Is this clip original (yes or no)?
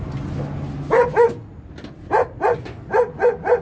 yes